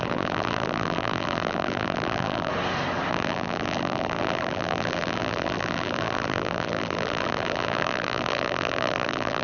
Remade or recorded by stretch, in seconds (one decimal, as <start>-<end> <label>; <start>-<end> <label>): 0.0-2.5 remade; 2.5-3.1 recorded; 3.1-9.4 remade

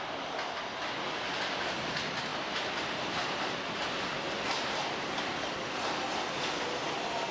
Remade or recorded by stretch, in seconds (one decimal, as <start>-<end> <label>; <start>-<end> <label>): 0.0-7.3 recorded